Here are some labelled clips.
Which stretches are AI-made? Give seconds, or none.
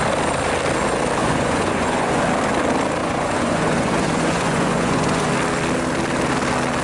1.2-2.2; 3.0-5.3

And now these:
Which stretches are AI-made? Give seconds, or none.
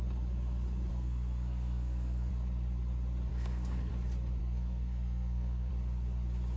0.9-2.3; 3.3-3.9; 4.4-5.7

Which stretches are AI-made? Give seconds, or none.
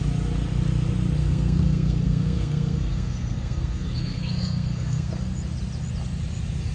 1.2-5.1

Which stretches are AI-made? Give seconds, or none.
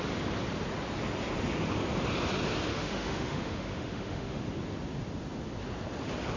2.7-4.4